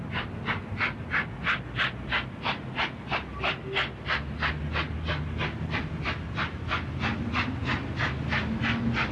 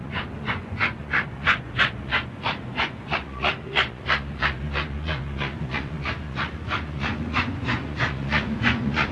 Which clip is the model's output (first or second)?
second